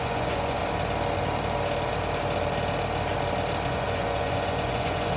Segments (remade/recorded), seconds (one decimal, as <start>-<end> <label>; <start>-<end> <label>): 0.0-0.6 remade; 0.6-3.7 recorded; 3.7-5.2 remade